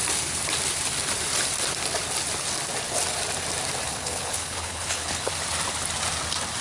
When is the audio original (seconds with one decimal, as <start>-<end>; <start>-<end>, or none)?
0.0-3.9; 5.3-6.6